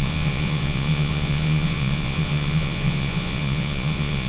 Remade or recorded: remade